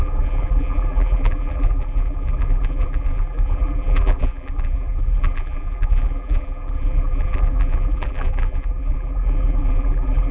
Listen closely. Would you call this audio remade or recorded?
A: remade